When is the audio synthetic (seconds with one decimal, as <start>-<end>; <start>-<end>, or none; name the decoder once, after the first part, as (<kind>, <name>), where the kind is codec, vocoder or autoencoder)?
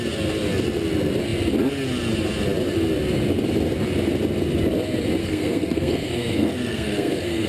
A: 5.2-7.5 (codec, SNAC)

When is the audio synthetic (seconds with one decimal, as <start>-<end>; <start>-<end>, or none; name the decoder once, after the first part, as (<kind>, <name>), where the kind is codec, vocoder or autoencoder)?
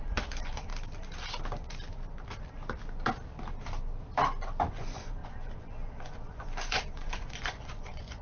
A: 0.0-0.7 (vocoder, Vocos); 4.7-8.2